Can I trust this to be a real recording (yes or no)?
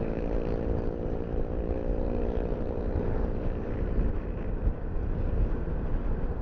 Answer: no